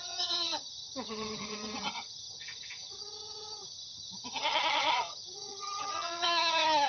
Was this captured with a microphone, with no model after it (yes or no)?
no